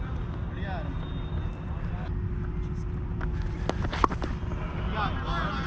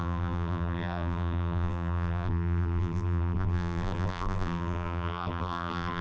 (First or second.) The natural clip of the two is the first